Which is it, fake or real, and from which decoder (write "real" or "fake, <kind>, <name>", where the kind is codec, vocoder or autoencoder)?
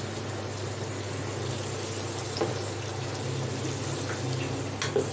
real